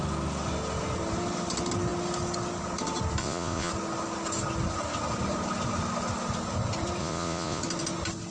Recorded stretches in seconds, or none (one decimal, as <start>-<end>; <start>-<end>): 0.0-3.2; 3.7-7.0; 7.6-8.3